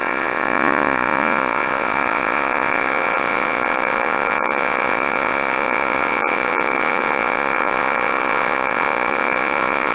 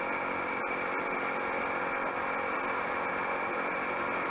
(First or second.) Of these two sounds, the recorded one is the second